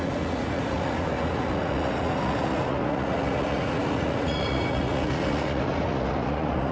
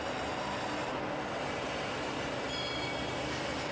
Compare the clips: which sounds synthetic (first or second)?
first